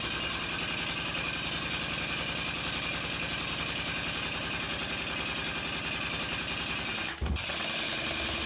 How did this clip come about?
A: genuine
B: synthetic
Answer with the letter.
A